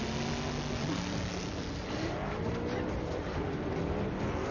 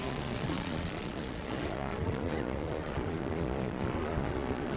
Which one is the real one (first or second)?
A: first